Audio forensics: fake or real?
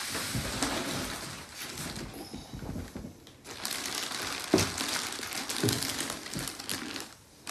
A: real